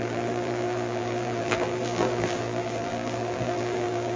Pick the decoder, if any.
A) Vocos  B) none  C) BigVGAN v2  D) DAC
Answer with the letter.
C